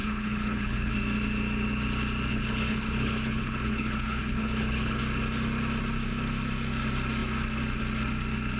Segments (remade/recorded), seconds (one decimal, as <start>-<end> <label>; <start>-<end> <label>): 0.0-0.9 remade; 0.9-2.3 recorded; 2.3-5.0 remade; 5.0-8.6 recorded

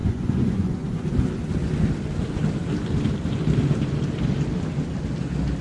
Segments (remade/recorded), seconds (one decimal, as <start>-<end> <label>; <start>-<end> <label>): 0.0-1.1 remade; 1.1-5.6 recorded

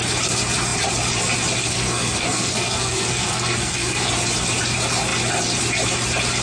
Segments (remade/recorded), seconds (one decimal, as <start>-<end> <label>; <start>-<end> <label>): 0.0-1.6 recorded; 1.6-4.1 remade; 4.1-6.4 recorded

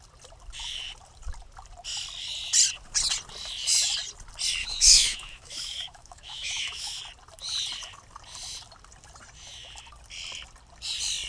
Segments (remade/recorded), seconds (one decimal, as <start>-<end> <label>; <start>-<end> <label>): 0.0-4.6 recorded; 4.6-7.0 remade; 7.0-11.3 recorded

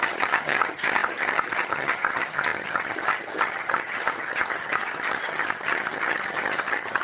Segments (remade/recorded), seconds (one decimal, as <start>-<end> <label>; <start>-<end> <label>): 0.0-7.0 remade